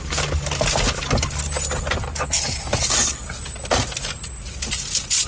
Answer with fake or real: real